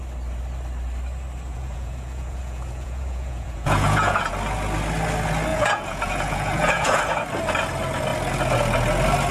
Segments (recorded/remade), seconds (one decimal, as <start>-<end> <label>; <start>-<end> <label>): 0.0-1.5 recorded; 1.5-4.3 remade; 4.3-5.5 recorded; 5.5-7.0 remade; 7.0-9.3 recorded